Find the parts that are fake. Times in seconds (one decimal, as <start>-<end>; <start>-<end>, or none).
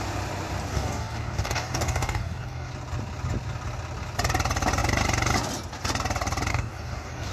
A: 0.7-2.7; 6.5-7.3